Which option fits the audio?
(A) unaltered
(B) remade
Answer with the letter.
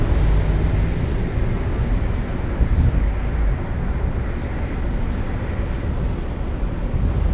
A